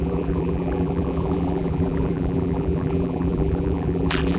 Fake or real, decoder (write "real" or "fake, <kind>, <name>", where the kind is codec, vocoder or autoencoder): fake, vocoder, BigVGAN v2